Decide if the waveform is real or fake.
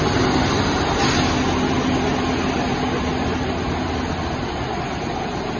real